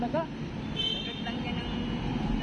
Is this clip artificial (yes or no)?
no